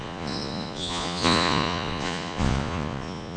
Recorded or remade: remade